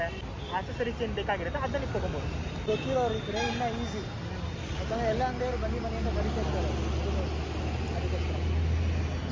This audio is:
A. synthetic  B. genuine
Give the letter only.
B